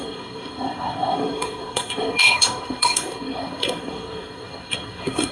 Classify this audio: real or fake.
fake